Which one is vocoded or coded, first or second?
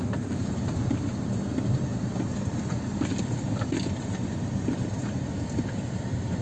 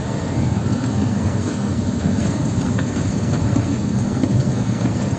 second